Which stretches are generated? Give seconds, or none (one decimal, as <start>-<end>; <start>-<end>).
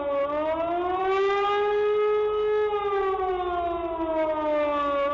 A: none